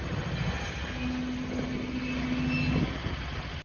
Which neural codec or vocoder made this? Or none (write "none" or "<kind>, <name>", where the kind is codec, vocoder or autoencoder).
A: none